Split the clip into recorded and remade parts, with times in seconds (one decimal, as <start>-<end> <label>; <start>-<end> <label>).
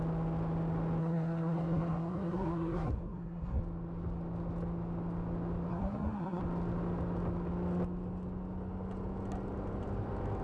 0.0-1.0 recorded; 1.0-3.6 remade; 3.6-5.7 recorded; 5.7-6.4 remade; 6.4-10.4 recorded